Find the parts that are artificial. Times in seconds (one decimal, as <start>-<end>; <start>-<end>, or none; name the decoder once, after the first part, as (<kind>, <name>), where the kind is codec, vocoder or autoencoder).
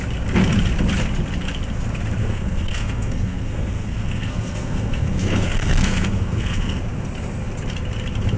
2.2-6.8 (codec, SNAC)